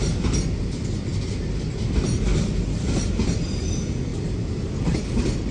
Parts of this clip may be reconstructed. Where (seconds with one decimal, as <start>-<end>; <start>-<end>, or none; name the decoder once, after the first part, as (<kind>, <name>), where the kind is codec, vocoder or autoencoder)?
none